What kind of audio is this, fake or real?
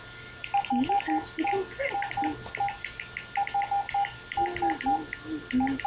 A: real